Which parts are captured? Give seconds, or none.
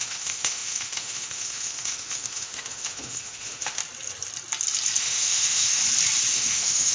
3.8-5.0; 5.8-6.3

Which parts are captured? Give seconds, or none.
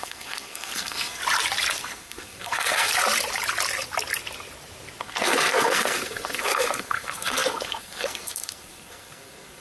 1.2-1.8; 2.9-5.0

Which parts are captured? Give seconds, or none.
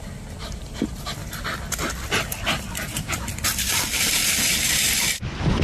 0.0-1.2; 4.6-5.6